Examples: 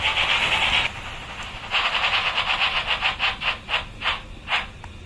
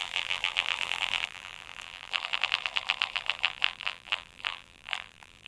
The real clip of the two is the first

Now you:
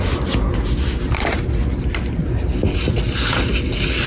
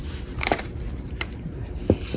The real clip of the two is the first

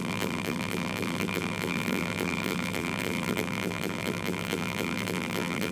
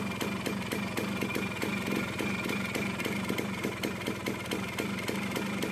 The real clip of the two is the second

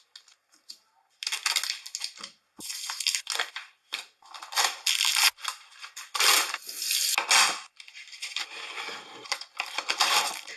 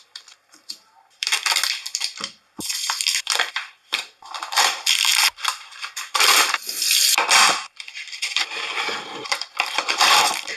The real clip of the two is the first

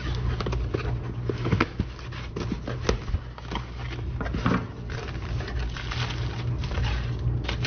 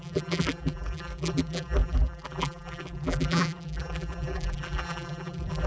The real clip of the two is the first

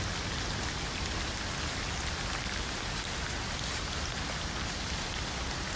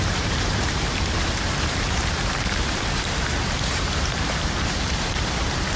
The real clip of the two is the first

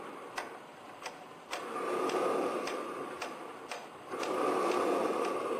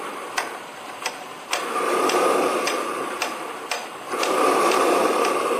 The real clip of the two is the first